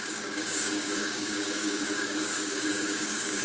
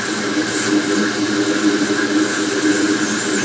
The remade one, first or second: first